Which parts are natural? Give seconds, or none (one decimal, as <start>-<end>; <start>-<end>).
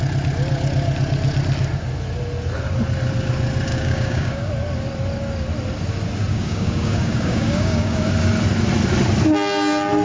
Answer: 0.0-3.7; 4.5-6.3; 8.0-10.0